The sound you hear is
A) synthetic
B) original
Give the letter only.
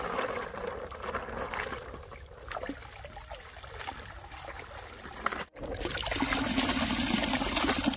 B